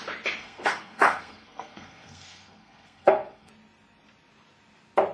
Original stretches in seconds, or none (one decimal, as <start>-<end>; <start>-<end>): 0.0-0.4; 3.5-5.1